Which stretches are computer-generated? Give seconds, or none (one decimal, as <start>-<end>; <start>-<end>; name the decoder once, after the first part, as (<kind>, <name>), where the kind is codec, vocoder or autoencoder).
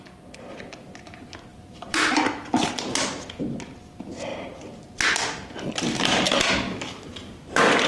1.5-2.2 (vocoder, BigVGAN v2)